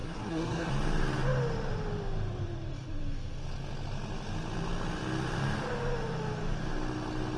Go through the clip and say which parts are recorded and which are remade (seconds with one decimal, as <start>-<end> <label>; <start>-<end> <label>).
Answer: 0.0-0.7 remade; 0.7-7.4 recorded